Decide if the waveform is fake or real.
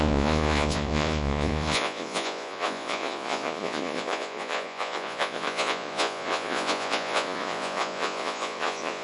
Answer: fake